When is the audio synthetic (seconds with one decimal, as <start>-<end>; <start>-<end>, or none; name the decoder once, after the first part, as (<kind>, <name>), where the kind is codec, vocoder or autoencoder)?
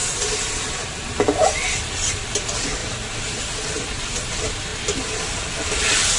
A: none